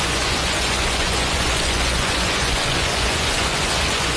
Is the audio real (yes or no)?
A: no